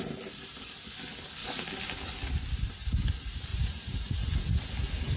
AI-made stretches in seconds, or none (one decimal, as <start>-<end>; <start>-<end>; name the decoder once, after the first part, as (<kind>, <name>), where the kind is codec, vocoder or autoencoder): 3.5-4.3 (vocoder, BigVGAN v2)